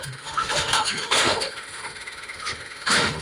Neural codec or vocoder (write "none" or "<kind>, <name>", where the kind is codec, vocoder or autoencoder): autoencoder, DAC-VAE